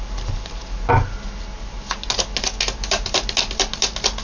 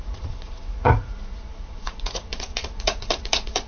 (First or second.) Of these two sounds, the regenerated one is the second